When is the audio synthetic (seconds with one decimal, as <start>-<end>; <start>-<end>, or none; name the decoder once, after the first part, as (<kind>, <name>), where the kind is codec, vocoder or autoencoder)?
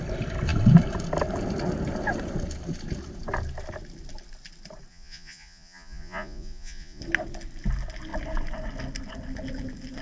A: 4.9-7.0 (vocoder, Vocos)